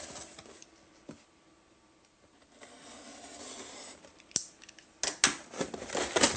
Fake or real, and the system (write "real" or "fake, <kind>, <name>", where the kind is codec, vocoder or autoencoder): real